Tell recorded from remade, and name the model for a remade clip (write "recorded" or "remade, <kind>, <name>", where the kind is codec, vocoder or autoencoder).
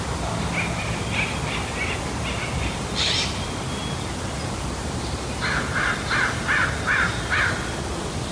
recorded